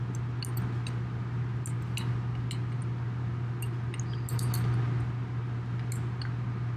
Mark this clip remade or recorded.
recorded